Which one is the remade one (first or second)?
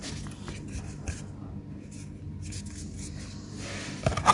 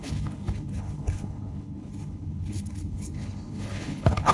second